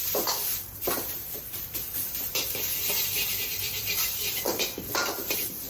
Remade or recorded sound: remade